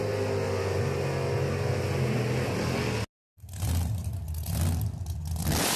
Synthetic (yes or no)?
no